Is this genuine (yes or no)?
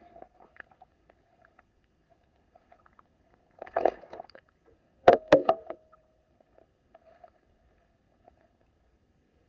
no